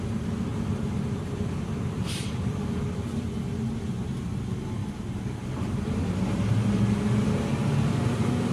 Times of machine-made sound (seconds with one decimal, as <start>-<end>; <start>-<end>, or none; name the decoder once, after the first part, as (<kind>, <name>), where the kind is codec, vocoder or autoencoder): 0.5-3.1 (vocoder, BigVGAN v2); 4.8-6.0